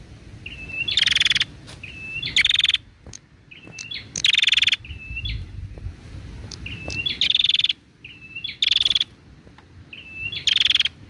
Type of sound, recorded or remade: recorded